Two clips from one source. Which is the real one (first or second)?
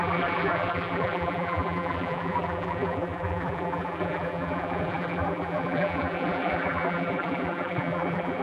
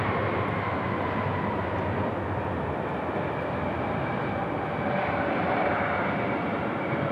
second